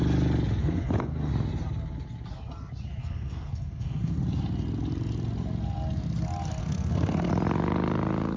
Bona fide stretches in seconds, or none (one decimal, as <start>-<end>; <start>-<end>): 0.0-0.6; 1.3-3.0; 4.2-6.6; 7.3-8.4